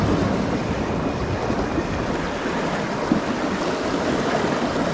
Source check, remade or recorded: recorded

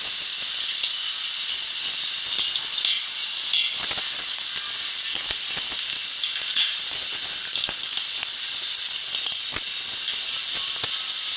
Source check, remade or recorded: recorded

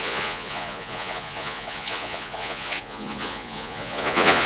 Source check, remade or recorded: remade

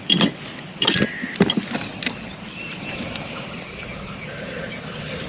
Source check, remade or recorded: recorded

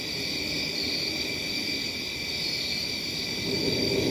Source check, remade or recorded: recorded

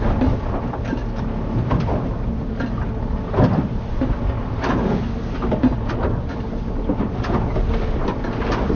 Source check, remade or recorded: recorded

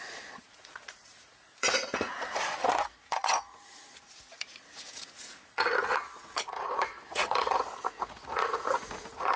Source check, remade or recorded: remade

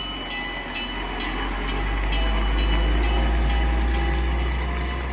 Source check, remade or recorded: recorded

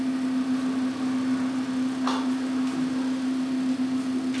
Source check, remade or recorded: recorded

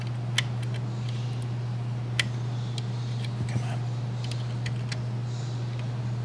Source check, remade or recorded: recorded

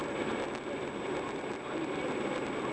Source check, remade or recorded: recorded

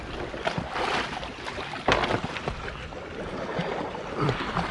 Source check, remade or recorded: recorded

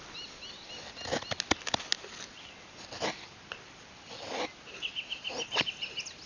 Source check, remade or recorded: recorded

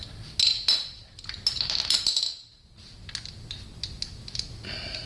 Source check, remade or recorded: recorded